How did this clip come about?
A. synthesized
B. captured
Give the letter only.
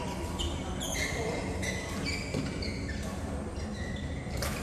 B